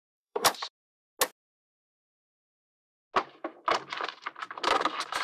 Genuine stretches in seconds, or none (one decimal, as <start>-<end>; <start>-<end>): 0.7-5.2